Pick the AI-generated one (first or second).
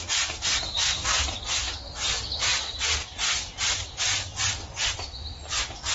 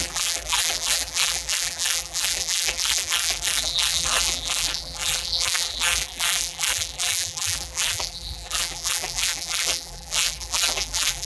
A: second